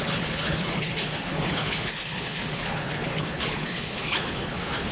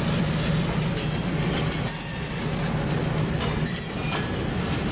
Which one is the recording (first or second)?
second